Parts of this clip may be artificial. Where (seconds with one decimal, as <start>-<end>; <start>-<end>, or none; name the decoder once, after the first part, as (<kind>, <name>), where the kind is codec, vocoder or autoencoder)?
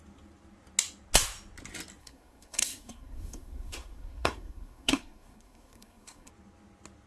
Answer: 2.0-6.3 (codec, SNAC)